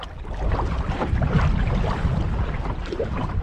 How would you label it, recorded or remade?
recorded